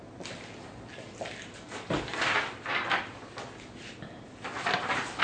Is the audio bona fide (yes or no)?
yes